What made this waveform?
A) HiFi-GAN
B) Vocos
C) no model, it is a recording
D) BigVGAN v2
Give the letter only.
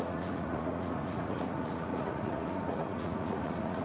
B